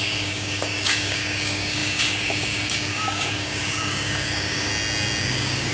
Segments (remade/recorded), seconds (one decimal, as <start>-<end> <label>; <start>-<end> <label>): 0.0-4.7 remade; 4.7-5.2 recorded; 5.2-5.7 remade